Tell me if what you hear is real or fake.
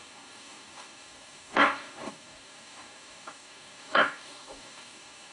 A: fake